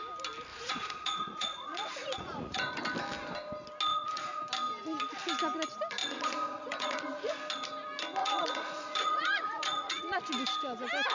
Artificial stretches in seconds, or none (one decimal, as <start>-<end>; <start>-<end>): 0.5-2.8; 3.9-4.4; 6.0-7.3; 8.2-10.0